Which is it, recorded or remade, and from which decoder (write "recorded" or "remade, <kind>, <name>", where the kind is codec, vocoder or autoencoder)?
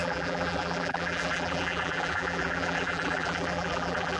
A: remade, vocoder, BigVGAN v2